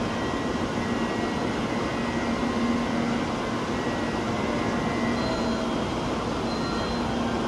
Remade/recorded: recorded